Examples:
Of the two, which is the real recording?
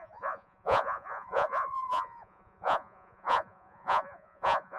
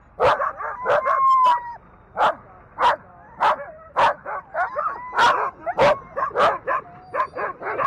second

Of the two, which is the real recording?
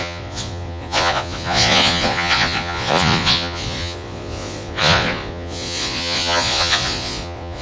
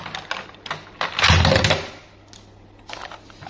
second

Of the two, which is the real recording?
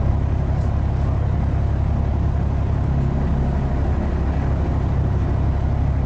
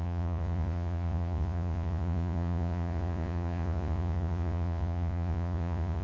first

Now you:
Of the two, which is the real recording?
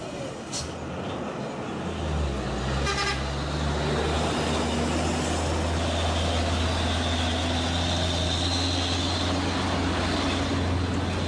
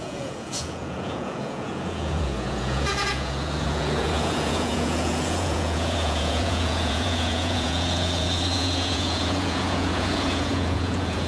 first